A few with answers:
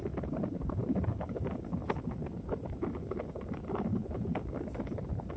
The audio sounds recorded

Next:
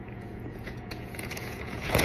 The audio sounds remade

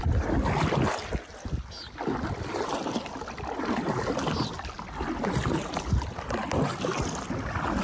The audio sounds recorded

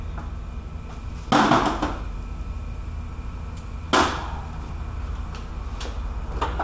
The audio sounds recorded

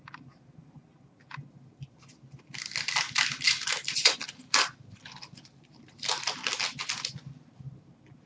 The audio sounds recorded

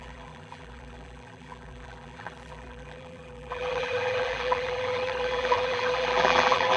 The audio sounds remade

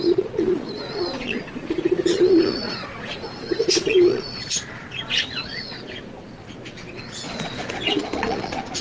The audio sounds remade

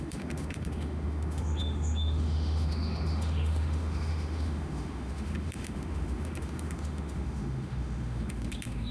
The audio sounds remade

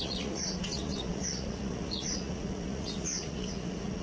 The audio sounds remade